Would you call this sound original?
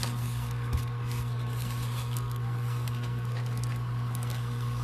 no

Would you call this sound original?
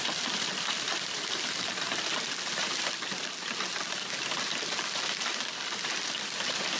yes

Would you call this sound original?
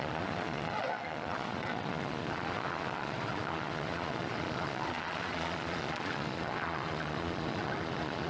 no